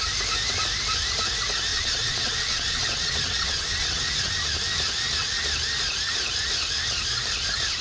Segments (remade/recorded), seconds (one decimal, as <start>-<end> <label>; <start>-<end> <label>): 0.0-1.7 recorded; 1.7-4.3 remade; 4.3-7.8 recorded